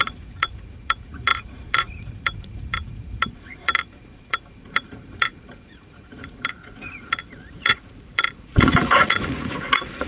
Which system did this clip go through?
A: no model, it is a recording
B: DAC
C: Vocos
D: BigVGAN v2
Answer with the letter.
C